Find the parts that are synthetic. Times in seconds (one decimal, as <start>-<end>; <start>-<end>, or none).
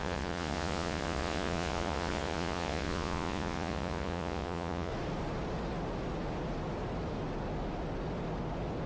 0.0-4.9